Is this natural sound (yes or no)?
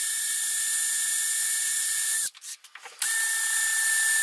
yes